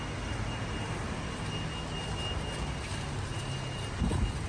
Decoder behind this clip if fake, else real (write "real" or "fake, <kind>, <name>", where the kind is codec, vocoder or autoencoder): real